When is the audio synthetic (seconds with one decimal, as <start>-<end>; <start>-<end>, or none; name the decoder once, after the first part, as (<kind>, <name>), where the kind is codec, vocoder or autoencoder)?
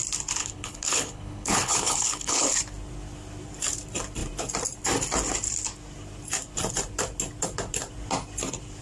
0.4-2.6 (codec, HILCodec)